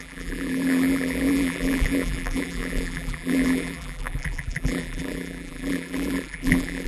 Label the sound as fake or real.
fake